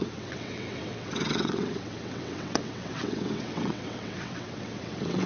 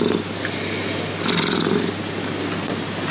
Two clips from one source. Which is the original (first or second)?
second